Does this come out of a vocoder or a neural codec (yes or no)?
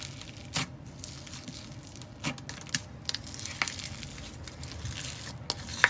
no